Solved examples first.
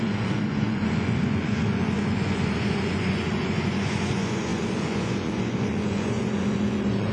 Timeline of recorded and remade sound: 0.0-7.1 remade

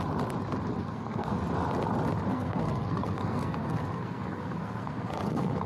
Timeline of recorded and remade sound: 0.0-0.8 recorded; 0.8-1.4 remade; 1.4-2.3 recorded; 2.3-5.7 remade